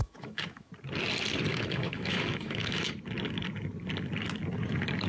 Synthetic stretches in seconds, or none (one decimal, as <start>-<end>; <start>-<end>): 0.0-0.7; 1.5-2.9